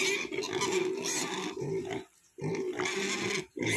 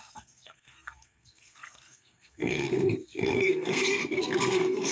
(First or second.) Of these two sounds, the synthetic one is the second